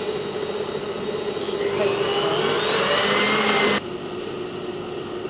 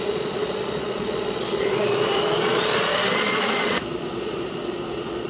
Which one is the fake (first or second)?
second